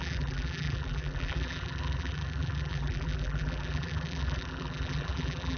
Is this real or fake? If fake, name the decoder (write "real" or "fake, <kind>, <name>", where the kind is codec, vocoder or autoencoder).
fake, vocoder, BigVGAN v2